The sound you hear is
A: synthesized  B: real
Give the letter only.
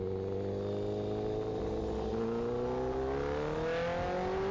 B